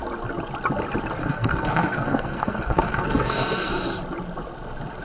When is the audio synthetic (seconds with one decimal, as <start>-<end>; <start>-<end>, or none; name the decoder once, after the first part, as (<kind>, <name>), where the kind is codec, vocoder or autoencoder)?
1.2-3.7 (codec, SNAC)